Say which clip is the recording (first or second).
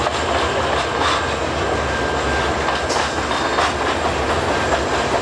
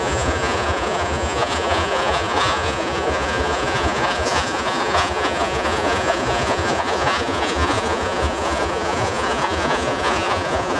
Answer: first